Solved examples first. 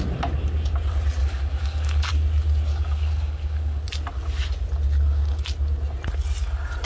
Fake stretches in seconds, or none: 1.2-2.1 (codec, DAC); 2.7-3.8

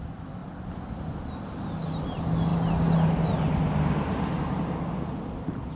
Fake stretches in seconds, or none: none

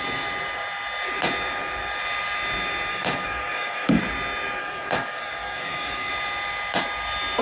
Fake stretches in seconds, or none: 2.9-4.0 (codec, DAC); 4.6-6.1

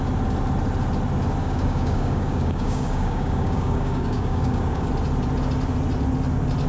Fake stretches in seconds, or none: 1.4-4.9 (codec, DAC)